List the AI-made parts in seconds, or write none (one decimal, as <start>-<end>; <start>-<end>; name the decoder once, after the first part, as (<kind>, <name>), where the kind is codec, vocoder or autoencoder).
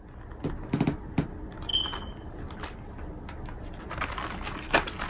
none